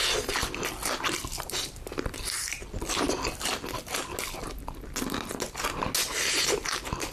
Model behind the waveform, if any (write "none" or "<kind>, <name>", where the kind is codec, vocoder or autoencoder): none